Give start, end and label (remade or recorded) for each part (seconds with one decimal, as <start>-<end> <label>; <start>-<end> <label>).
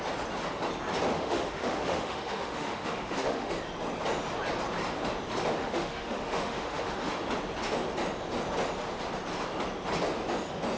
0.0-1.1 recorded; 1.1-3.5 remade; 3.5-5.6 recorded; 5.6-7.1 remade; 7.1-10.8 recorded